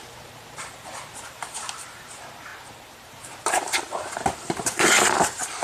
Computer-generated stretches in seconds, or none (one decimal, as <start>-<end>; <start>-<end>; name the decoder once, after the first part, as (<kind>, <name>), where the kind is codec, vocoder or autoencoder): 0.0-5.6 (vocoder, BigVGAN v2)